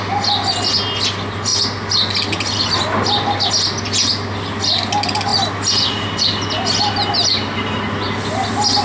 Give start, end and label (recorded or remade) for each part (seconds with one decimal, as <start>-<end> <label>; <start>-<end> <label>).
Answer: 0.0-8.8 recorded